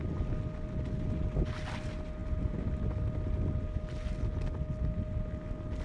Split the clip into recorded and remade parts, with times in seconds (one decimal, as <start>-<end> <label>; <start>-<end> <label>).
0.0-2.2 recorded; 2.2-2.7 remade; 2.7-5.8 recorded